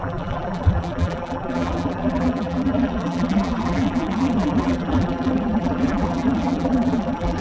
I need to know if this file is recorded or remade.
remade